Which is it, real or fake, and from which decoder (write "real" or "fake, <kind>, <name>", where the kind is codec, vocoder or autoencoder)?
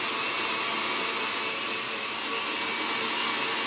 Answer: real